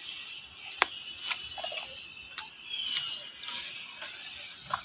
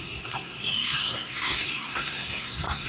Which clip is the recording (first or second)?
first